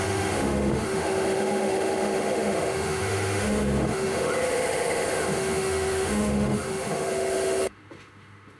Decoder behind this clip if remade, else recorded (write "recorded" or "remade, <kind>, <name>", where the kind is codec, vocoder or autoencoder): remade, autoencoder, DAC-VAE